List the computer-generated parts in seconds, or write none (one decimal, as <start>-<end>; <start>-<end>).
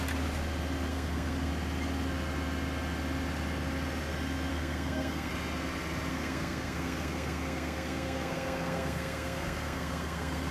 0.9-1.5; 4.5-5.3; 6.1-10.5